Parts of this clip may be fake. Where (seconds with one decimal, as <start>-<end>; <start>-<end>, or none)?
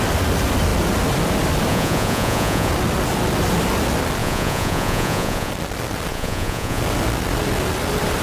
1.7-2.7; 4.2-5.5; 6.1-6.8